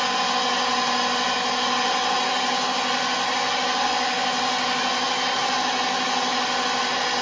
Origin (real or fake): real